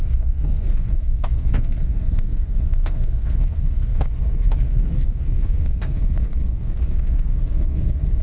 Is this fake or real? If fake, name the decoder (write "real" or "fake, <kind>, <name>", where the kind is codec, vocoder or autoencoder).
fake, codec, SNAC